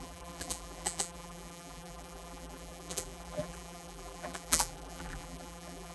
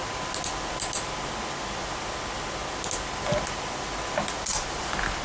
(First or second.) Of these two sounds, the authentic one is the second